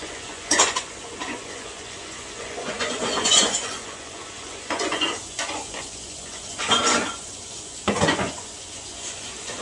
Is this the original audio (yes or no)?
no